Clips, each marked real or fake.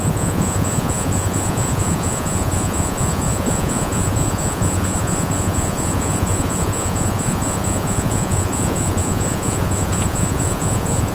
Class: fake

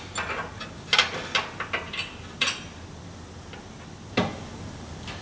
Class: real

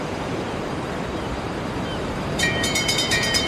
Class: fake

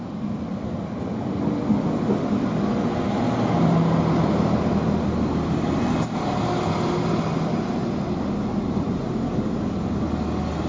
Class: real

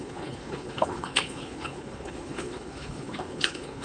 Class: fake